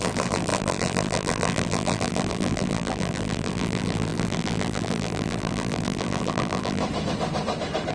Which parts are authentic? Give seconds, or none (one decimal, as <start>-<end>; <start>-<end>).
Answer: 6.8-7.9

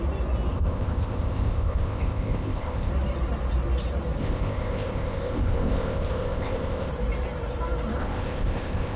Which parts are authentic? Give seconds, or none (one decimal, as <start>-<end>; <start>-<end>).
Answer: 0.0-0.5; 2.9-4.2; 6.9-8.0

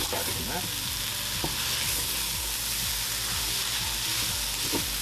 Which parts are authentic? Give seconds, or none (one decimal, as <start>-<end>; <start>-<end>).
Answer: 0.0-5.0